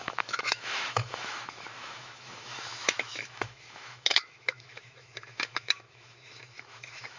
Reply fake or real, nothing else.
fake